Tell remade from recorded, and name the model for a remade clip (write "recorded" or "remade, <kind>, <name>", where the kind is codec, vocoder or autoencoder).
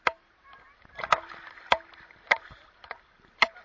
remade, vocoder, BigVGAN v2